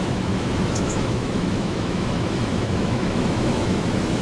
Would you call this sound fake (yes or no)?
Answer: yes